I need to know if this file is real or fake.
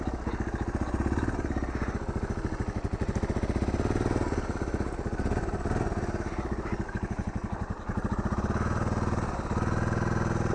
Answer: real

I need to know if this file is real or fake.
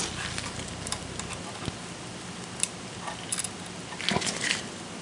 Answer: real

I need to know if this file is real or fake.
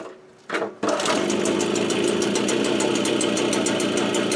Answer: real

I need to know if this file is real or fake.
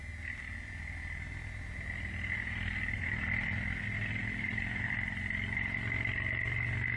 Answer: real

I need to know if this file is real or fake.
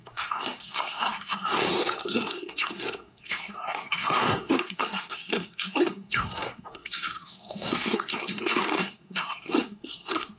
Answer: fake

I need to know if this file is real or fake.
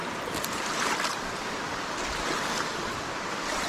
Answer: fake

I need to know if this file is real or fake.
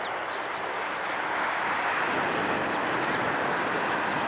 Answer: real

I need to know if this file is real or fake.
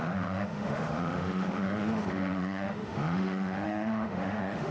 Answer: fake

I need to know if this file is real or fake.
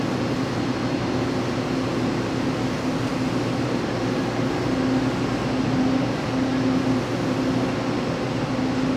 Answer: real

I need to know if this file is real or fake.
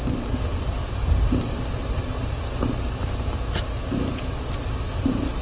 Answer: real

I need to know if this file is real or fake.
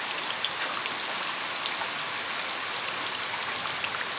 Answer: real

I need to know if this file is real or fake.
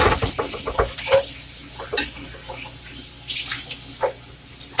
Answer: real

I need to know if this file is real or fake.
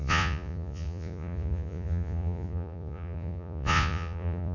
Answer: fake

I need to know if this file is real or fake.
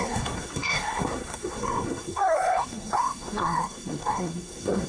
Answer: fake